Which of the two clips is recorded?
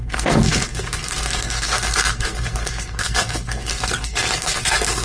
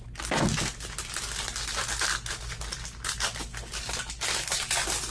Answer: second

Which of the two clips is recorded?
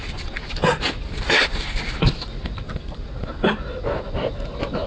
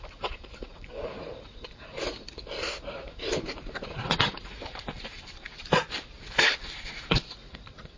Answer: first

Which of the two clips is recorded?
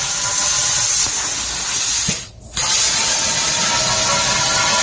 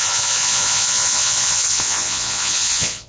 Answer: first